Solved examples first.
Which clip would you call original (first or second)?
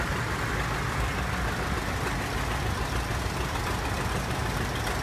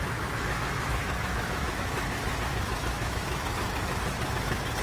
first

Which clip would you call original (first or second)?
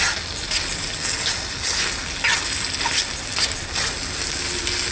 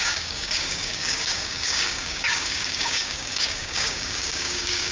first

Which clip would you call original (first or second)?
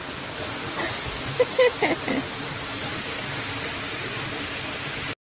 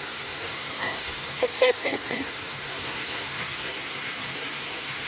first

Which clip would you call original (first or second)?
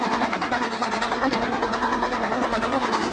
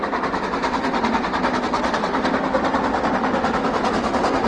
second